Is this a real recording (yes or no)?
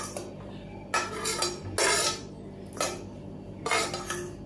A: yes